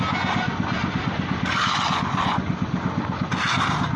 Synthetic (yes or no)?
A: no